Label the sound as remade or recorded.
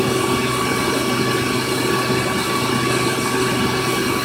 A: recorded